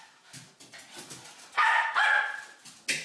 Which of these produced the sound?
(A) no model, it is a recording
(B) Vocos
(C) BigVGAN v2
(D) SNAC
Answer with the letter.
A